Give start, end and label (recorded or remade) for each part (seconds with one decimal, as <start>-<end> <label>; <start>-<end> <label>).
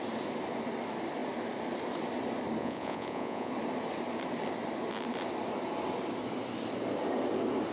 0.0-2.6 recorded; 2.6-3.5 remade; 3.5-7.7 recorded